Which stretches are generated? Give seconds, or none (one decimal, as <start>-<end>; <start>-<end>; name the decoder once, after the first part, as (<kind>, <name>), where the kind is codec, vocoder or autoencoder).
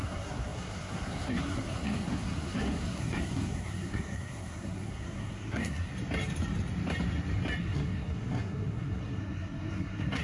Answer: 0.0-5.9 (codec, SNAC); 7.6-10.2